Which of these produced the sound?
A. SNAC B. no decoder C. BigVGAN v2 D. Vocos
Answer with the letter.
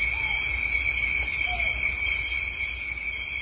B